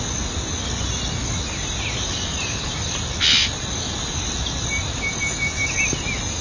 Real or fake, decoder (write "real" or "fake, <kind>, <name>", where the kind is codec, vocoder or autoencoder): real